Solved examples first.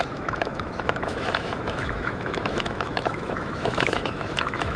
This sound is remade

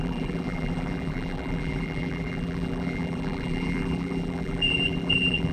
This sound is remade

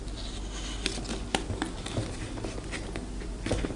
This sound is recorded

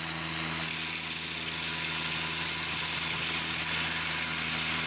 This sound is recorded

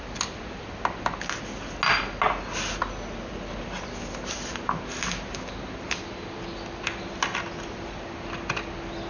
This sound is recorded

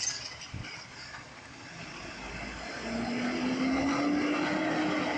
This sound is recorded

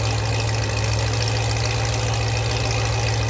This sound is recorded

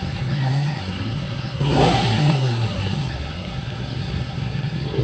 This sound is remade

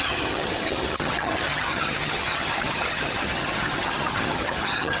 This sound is remade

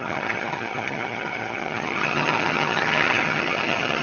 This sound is remade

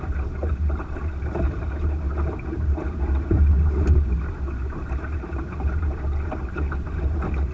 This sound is remade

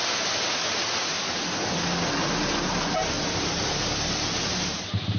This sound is recorded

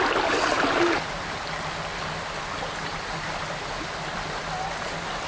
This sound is recorded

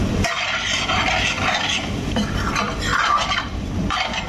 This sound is remade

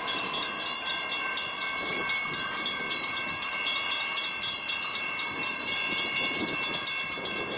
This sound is recorded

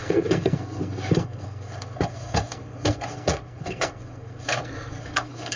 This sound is remade